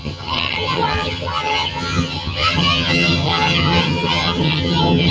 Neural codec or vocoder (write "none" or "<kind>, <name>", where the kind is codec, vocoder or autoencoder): vocoder, HiFi-GAN